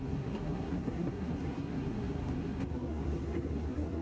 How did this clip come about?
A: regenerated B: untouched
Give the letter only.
A